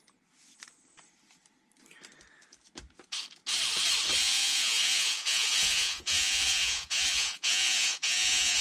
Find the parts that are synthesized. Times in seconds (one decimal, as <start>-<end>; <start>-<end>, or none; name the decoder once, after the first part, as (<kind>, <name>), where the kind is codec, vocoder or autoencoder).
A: 4.2-8.6 (vocoder, Vocos)